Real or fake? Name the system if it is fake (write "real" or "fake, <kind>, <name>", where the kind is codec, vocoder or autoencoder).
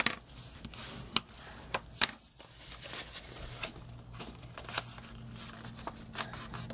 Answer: real